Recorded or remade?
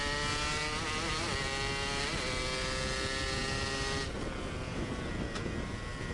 recorded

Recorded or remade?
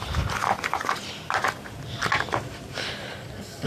recorded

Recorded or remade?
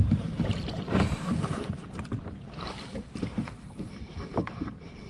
remade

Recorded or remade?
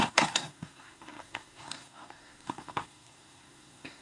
remade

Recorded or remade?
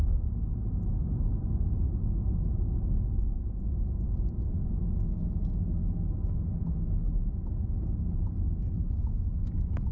recorded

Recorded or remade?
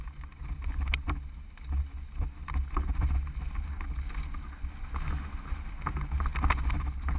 recorded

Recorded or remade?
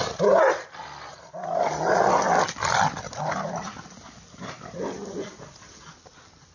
recorded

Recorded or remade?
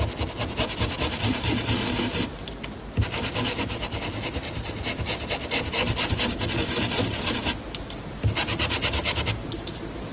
recorded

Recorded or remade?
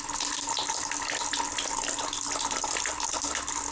recorded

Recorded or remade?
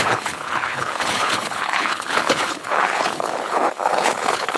remade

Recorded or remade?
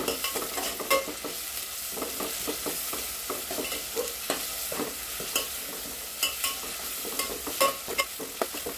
recorded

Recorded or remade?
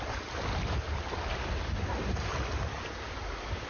recorded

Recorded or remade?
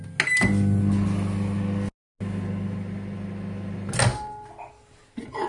recorded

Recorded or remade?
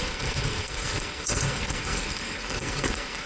remade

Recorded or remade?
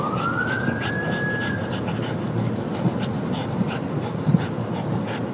recorded